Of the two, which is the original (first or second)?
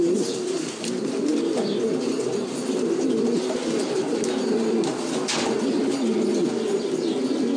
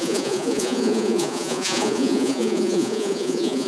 first